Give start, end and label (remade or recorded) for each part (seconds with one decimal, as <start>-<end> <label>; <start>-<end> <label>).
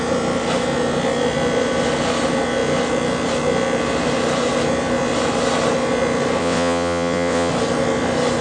0.0-6.4 recorded; 6.4-7.5 remade; 7.5-8.4 recorded